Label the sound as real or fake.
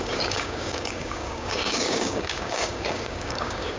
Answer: fake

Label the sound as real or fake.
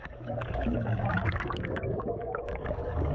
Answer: fake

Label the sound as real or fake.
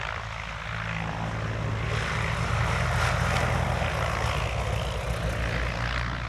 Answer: real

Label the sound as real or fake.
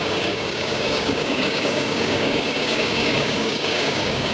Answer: fake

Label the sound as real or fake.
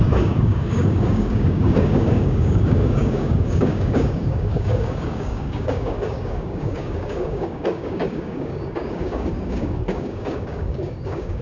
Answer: fake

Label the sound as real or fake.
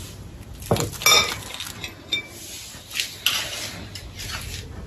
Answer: real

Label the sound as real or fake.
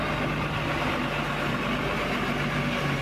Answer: real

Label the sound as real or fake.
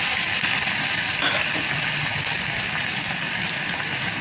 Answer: real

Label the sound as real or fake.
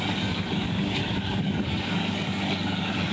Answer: fake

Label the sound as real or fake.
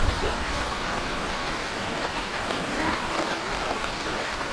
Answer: fake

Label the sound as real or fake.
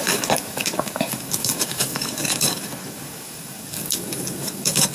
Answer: fake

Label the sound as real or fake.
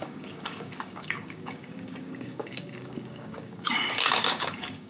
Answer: fake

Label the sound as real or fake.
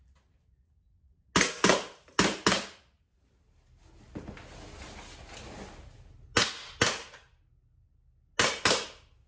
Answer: real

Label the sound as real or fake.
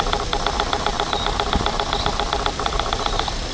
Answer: real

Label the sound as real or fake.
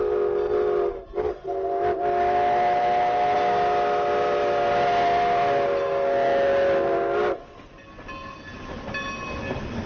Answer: real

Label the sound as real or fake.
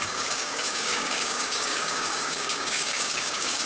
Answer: fake